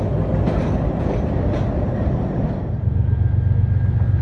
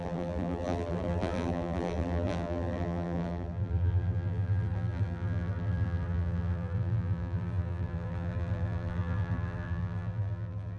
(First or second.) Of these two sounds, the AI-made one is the second